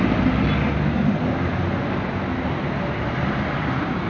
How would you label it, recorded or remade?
recorded